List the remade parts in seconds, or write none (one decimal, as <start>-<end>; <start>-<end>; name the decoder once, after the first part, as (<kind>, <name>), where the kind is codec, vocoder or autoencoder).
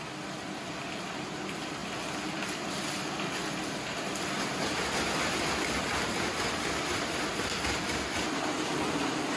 none